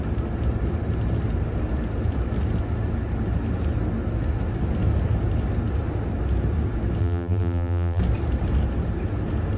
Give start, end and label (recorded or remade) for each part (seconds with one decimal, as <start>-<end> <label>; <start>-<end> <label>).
0.0-7.0 recorded; 7.0-8.0 remade; 8.0-9.6 recorded